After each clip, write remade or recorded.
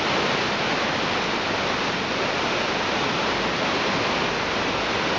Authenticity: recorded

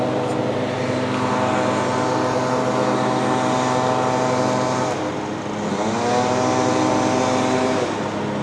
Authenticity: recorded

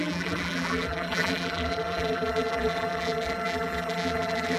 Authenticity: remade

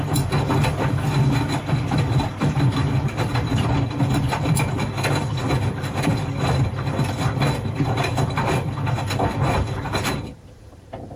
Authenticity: remade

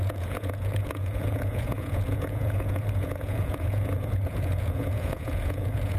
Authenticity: remade